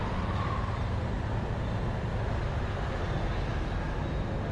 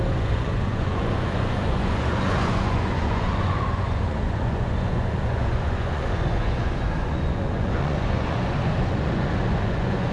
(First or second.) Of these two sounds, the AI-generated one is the second